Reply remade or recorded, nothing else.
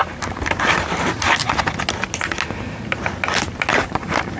recorded